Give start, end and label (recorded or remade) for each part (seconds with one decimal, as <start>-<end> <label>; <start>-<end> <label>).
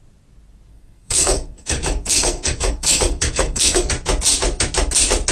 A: 0.0-0.7 recorded; 0.7-3.9 remade; 3.9-5.3 recorded